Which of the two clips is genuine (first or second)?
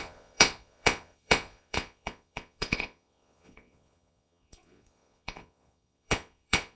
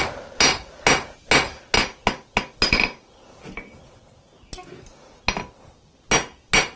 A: second